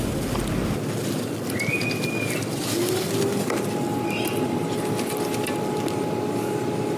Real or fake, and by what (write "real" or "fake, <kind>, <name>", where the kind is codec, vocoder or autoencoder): real